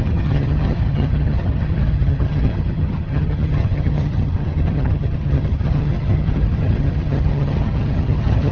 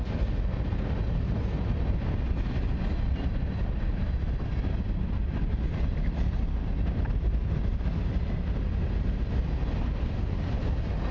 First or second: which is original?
second